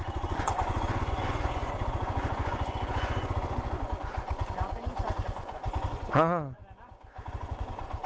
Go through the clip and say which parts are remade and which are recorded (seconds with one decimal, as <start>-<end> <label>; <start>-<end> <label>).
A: 0.0-6.6 remade; 6.6-7.3 recorded; 7.3-8.1 remade